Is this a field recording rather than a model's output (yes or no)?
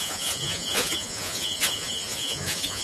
no